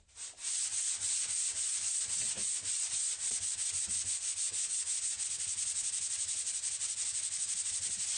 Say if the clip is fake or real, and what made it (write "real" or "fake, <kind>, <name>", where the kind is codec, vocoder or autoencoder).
real